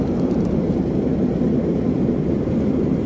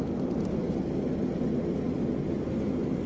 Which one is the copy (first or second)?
first